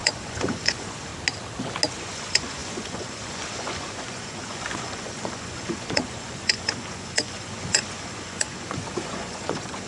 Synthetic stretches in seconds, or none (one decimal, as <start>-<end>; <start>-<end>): 0.0-1.1; 1.9-9.9